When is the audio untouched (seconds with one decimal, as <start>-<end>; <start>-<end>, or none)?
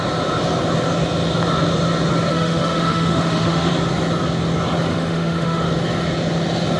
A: 0.0-2.3; 3.7-4.9; 5.6-6.8